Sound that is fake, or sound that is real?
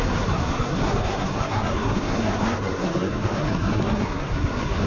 fake